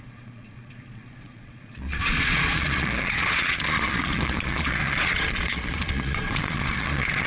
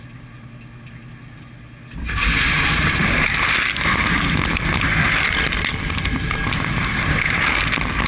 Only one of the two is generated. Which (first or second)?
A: first